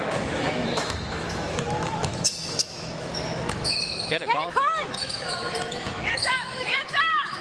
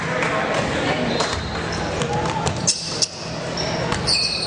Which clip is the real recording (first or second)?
second